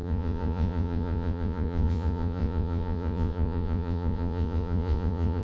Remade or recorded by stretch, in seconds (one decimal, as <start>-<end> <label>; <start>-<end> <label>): 0.0-5.4 remade